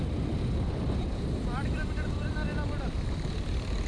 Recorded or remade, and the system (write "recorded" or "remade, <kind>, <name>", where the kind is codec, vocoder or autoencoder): remade, vocoder, BigVGAN v2